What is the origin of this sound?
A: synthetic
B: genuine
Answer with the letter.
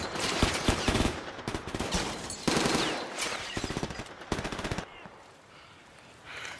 A